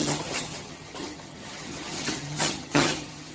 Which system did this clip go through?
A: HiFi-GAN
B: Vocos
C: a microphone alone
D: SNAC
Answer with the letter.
A